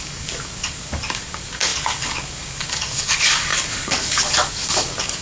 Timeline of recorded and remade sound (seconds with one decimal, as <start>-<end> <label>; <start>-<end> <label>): 0.0-5.2 remade